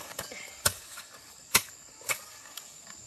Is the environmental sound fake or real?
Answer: fake